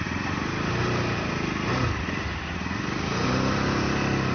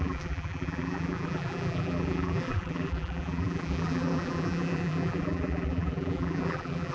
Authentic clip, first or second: first